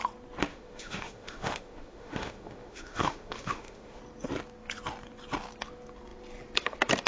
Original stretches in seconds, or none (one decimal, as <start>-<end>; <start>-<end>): 0.0-0.5; 4.0-7.1